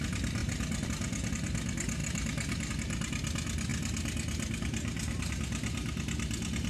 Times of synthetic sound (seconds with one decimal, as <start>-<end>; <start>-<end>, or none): none